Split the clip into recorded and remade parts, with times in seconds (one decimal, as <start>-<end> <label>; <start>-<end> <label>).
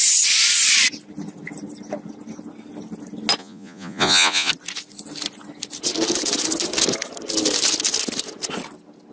0.0-3.4 recorded; 3.4-4.5 remade; 4.5-9.1 recorded